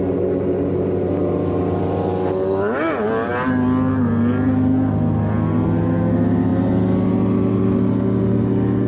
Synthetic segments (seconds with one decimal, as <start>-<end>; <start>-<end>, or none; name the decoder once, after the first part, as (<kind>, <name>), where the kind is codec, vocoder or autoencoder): none